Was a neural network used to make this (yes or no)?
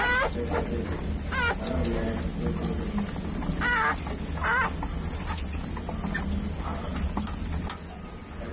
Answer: no